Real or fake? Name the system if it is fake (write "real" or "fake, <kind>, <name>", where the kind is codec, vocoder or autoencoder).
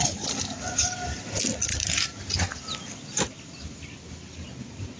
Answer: real